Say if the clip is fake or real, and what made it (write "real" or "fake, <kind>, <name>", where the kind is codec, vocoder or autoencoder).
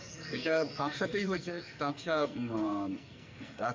fake, codec, SNAC